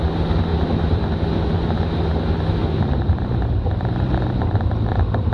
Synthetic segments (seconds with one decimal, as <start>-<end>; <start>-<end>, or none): 0.5-1.2; 2.6-4.7